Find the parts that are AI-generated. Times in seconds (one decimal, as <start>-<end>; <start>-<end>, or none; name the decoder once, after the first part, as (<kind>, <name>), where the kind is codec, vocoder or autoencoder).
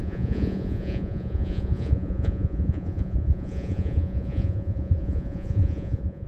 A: 0.0-6.3 (vocoder, Vocos)